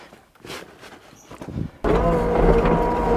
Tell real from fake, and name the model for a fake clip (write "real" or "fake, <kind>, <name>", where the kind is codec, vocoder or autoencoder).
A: real